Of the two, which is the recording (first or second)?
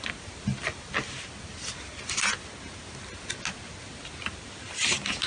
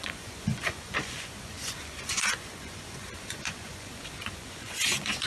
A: first